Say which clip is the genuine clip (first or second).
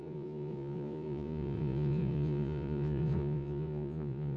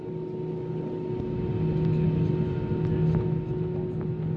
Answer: second